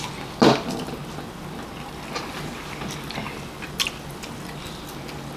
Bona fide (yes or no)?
yes